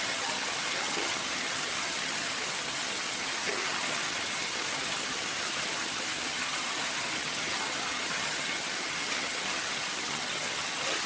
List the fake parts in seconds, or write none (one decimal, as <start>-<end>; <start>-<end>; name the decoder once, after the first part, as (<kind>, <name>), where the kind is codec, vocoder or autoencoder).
0.0-11.1 (vocoder, HiFi-GAN)